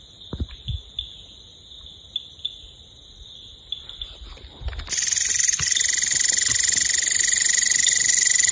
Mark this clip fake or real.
real